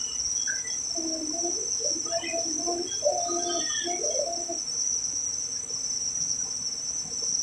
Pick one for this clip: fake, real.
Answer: real